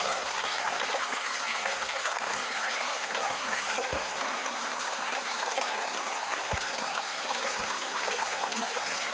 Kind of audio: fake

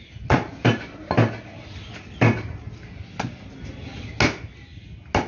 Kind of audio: real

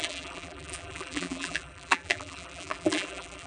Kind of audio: fake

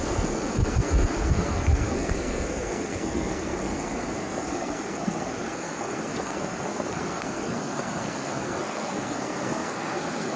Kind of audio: fake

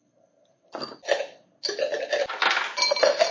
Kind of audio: real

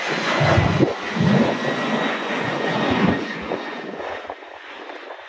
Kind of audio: fake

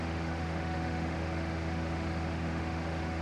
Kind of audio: fake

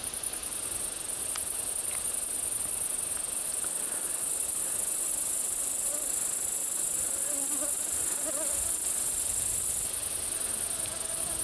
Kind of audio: real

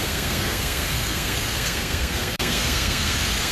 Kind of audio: fake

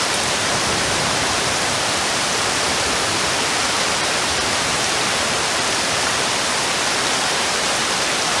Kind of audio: fake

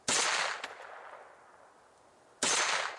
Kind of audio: real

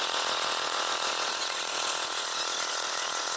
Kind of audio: fake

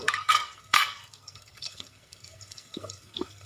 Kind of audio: fake